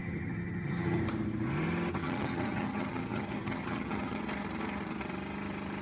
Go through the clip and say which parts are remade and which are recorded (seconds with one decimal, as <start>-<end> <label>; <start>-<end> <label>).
0.0-1.0 remade; 1.0-2.0 recorded; 2.0-4.2 remade; 4.2-5.8 recorded